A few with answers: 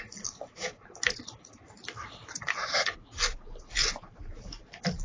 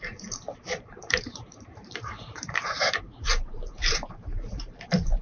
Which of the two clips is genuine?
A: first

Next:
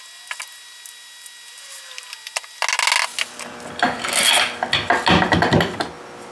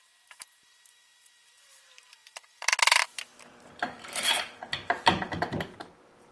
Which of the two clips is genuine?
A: first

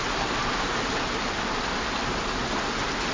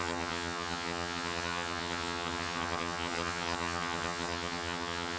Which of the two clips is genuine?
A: first